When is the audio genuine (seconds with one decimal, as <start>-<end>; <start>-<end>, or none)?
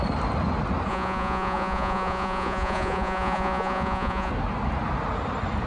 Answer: 0.0-0.9; 4.3-5.7